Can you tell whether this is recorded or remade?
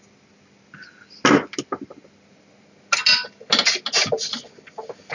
recorded